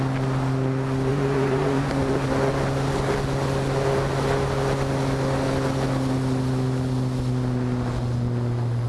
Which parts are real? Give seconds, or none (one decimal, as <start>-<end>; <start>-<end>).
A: 0.0-1.1; 2.0-8.9